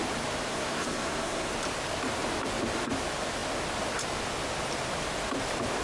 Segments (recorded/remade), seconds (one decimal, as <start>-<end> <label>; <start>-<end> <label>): 0.0-0.5 recorded; 0.5-1.5 remade; 1.5-5.8 recorded